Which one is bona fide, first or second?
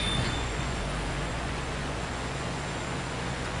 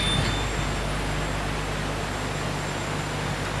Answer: second